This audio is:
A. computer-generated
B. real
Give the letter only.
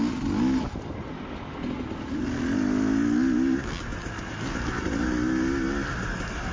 B